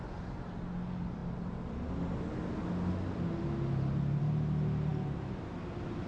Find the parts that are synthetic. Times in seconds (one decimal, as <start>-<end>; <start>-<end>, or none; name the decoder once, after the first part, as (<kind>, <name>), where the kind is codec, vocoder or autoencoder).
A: none